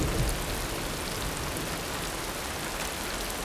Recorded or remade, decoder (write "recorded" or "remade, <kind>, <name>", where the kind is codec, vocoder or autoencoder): recorded